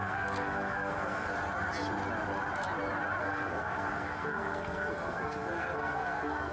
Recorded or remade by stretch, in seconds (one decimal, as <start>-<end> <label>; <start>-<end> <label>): 0.0-1.3 remade; 1.3-3.2 recorded; 3.2-6.5 remade